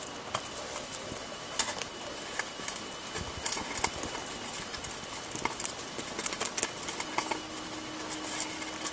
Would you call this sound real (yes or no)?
yes